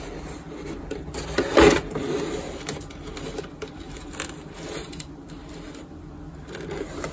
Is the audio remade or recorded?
recorded